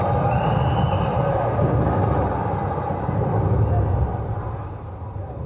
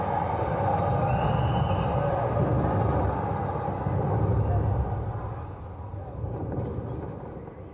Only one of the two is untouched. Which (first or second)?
second